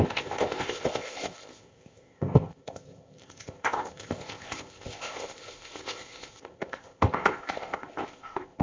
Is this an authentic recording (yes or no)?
no